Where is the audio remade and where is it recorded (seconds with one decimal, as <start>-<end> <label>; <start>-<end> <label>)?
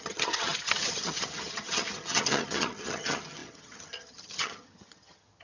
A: 0.0-5.4 remade